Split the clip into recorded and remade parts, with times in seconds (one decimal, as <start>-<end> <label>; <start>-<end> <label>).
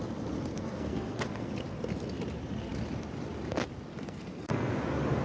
0.0-0.5 recorded; 0.5-1.5 remade; 1.5-3.9 recorded; 3.9-4.7 remade; 4.7-5.2 recorded